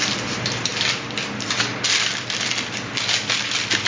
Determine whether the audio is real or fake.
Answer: real